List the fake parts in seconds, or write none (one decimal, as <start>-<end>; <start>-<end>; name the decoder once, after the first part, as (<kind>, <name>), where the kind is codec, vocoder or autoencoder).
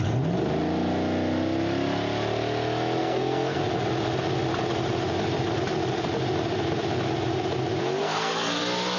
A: 3.0-3.6 (codec, SNAC); 8.0-8.6